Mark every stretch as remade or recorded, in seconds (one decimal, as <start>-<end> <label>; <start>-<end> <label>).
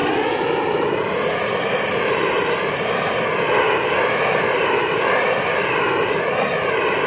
0.0-7.1 recorded